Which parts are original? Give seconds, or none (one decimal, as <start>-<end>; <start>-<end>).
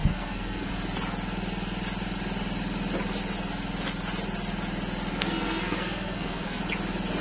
0.7-5.1; 6.6-7.2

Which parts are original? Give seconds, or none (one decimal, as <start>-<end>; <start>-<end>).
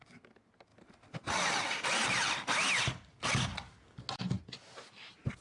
0.0-5.4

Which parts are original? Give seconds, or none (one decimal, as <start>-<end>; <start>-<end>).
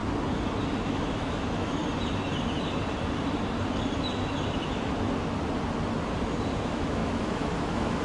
0.0-0.8; 1.8-6.6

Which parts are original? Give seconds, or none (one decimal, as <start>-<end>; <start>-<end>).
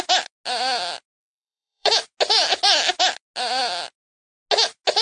0.0-1.2; 1.9-5.0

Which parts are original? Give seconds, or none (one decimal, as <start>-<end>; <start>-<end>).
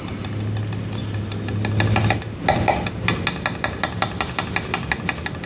0.0-5.5